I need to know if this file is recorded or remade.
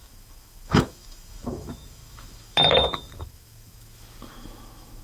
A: remade